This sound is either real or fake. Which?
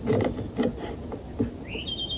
real